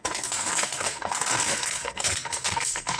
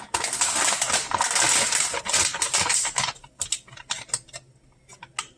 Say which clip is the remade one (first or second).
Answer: first